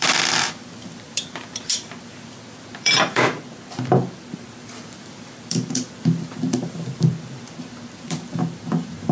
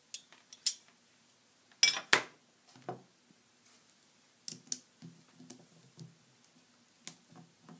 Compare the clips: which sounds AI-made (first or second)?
first